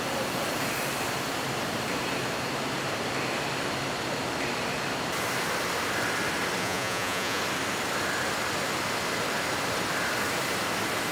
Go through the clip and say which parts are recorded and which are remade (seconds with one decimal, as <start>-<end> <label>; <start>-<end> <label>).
0.0-6.6 recorded; 6.6-7.4 remade; 7.4-11.1 recorded